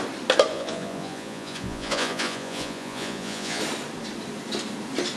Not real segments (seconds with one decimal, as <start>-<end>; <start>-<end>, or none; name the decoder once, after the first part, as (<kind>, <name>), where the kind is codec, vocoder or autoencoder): 0.5-3.6 (vocoder, Vocos)